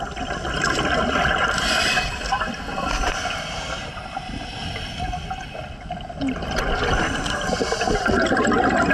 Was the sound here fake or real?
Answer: real